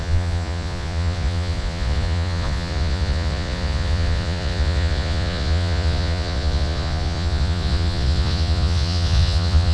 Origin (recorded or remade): remade